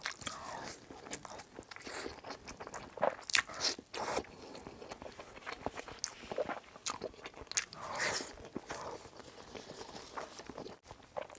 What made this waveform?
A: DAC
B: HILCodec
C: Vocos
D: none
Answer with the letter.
D